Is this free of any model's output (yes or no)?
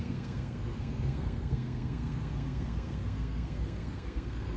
no